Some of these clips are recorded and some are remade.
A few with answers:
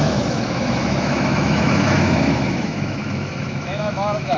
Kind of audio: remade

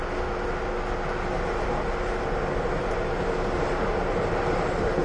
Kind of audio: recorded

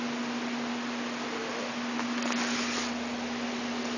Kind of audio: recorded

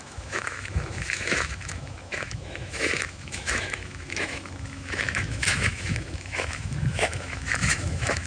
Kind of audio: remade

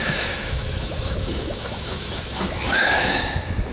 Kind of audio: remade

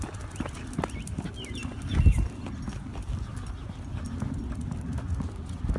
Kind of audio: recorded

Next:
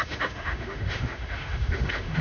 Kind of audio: remade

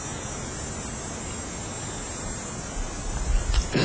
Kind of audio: recorded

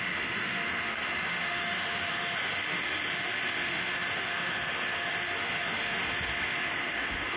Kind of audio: remade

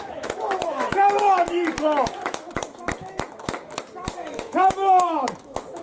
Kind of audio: remade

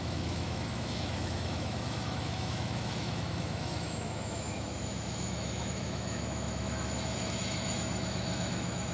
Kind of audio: remade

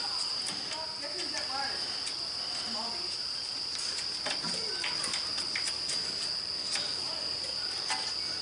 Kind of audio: recorded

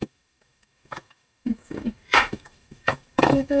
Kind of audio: remade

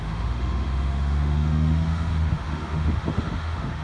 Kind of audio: remade